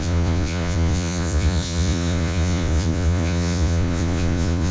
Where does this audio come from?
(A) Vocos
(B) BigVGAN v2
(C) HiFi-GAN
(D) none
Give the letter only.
A